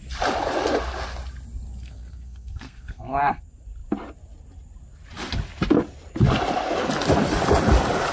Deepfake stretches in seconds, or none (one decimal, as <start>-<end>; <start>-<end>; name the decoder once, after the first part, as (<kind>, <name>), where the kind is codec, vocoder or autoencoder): 1.8-3.4 (codec, SNAC)